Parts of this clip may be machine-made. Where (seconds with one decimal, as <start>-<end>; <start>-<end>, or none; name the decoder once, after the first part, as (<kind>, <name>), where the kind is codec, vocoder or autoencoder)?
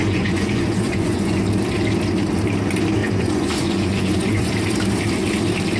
0.0-1.4 (vocoder, Vocos); 3.0-4.5